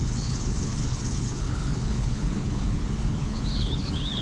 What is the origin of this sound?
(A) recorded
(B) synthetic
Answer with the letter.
B